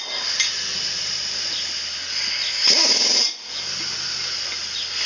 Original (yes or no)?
yes